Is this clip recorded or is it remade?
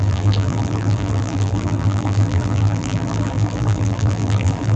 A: remade